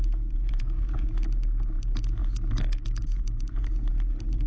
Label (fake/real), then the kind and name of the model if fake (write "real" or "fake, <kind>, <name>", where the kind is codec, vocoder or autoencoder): real